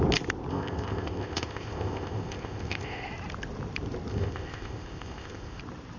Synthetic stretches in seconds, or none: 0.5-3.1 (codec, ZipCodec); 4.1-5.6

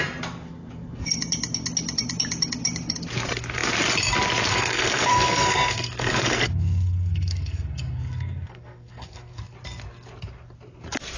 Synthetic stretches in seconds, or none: 4.5-9.4 (codec, SNAC)

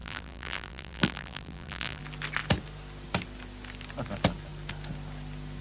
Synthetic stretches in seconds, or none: 0.0-2.0 (vocoder, BigVGAN v2)

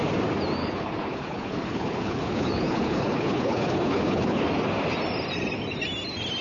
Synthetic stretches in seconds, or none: 0.6-4.4 (codec, HILCodec)

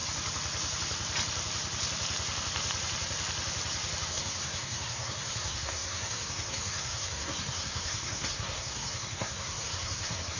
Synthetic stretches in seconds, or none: 4.1-10.4 (codec, SNAC)

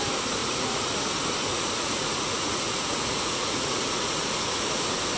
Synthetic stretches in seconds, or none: 0.4-1.1 (vocoder, Vocos); 1.5-4.6

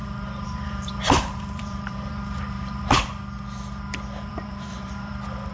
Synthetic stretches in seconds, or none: 0.0-2.9 (vocoder, BigVGAN v2); 4.3-5.1